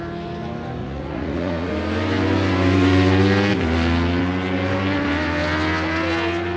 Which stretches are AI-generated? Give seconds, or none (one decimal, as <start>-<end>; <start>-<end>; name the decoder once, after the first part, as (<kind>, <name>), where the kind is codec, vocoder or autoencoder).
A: 0.8-1.7 (vocoder, Vocos)